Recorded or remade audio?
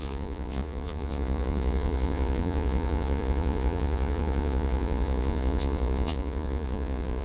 remade